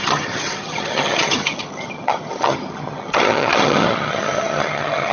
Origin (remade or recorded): remade